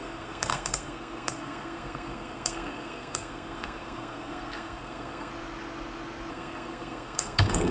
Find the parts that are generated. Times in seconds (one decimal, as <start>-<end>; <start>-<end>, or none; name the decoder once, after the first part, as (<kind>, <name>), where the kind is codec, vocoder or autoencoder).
0.0-5.3 (codec, SNAC); 6.3-7.7